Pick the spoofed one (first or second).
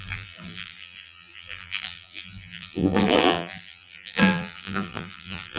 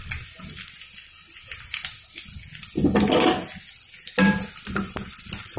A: first